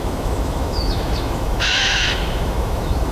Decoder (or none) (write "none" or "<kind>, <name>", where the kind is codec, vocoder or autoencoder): autoencoder, DAC-VAE